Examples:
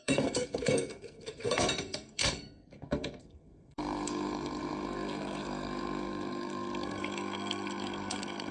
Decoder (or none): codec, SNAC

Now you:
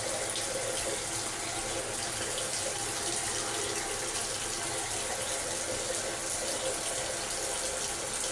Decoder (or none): none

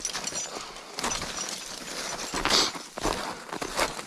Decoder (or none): none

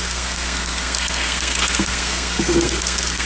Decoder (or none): codec, SNAC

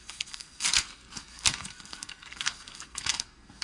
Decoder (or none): codec, SNAC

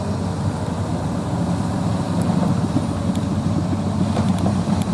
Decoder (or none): none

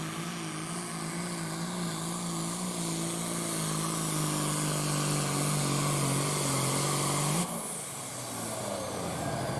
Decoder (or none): none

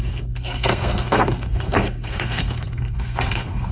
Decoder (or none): codec, SNAC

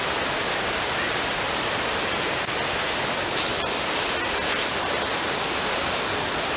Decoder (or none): none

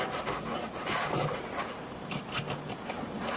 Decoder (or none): none